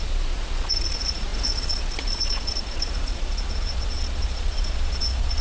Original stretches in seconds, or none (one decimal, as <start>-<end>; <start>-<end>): none